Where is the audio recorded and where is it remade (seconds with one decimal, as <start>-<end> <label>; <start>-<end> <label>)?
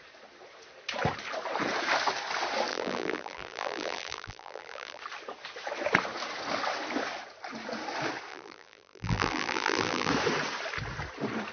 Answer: 0.0-2.7 recorded; 2.7-5.0 remade; 5.0-8.3 recorded; 8.3-10.1 remade; 10.1-11.5 recorded